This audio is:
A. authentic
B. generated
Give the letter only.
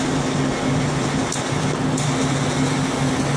A